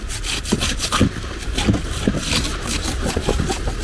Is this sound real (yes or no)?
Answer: yes